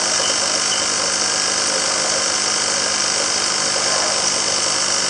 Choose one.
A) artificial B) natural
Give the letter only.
B